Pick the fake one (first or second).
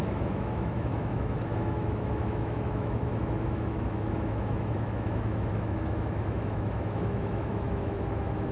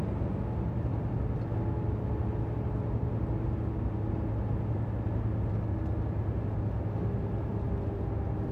first